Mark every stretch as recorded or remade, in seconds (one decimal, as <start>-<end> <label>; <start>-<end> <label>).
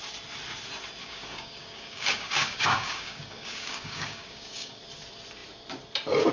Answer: 0.0-1.0 recorded; 1.0-4.8 remade; 4.8-6.3 recorded